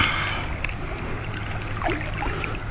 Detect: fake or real real